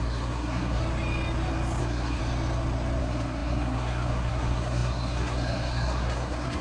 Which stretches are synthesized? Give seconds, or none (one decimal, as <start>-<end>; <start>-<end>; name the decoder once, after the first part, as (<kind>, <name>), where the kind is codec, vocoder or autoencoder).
0.0-0.8 (codec, SNAC); 1.8-2.2; 3.0-6.6